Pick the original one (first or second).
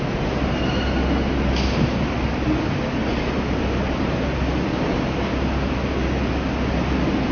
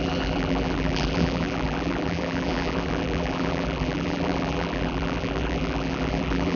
first